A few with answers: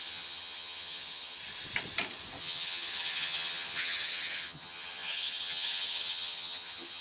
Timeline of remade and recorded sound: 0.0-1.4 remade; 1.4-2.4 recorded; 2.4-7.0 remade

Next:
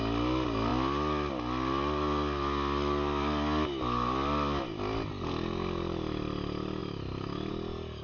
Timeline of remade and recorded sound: 0.0-8.0 recorded

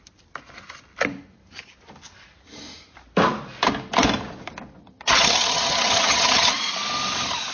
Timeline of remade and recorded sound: 0.0-4.8 recorded; 4.8-6.5 remade; 6.5-7.5 recorded

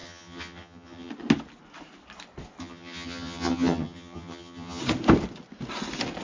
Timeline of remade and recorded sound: 0.0-1.1 remade; 1.1-2.6 recorded; 2.6-4.8 remade; 4.8-6.2 recorded

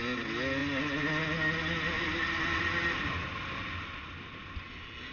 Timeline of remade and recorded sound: 0.0-5.1 recorded

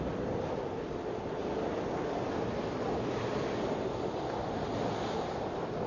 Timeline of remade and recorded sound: 0.0-5.9 recorded